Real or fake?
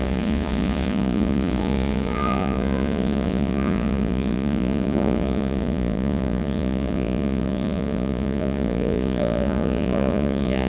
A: fake